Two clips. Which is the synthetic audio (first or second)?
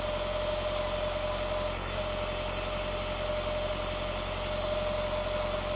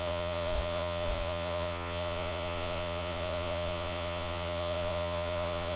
second